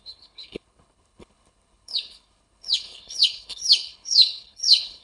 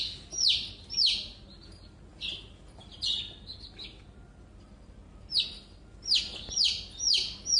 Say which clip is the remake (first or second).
first